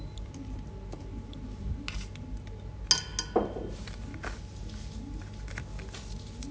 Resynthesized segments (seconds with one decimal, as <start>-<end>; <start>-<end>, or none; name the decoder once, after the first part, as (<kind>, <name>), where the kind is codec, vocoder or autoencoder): none